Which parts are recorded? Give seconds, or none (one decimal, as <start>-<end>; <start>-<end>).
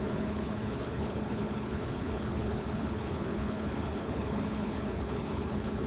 none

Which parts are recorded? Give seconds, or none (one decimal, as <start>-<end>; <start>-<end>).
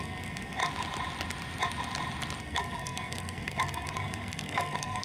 0.6-2.4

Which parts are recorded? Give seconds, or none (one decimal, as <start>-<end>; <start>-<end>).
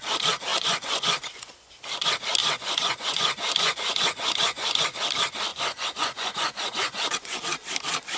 0.0-0.5; 1.7-2.4; 4.8-5.5; 7.4-8.2